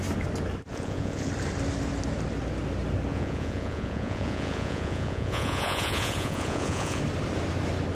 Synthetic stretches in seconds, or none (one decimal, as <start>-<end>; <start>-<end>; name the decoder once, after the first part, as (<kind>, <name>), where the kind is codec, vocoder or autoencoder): 0.7-1.3 (vocoder, Vocos); 3.1-7.0